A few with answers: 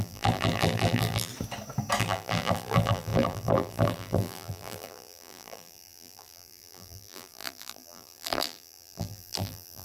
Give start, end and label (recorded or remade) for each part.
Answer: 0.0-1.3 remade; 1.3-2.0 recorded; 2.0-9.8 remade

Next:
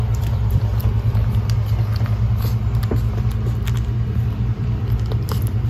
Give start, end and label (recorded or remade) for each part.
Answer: 0.0-0.7 remade; 0.7-4.1 recorded; 4.1-5.7 remade

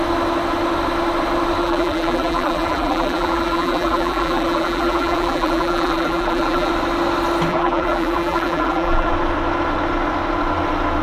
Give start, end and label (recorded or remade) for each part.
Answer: 0.0-1.6 recorded; 1.6-6.7 remade; 6.7-7.5 recorded; 7.5-9.1 remade; 9.1-11.0 recorded

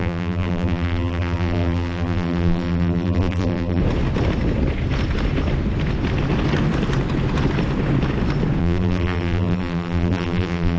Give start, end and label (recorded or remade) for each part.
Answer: 0.0-3.8 remade; 3.8-8.6 recorded; 8.6-10.8 remade

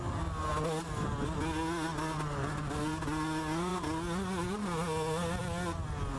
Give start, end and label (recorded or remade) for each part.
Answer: 0.0-6.2 recorded

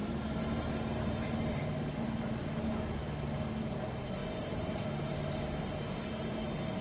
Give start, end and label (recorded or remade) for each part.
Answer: 0.0-0.7 remade; 0.7-6.8 recorded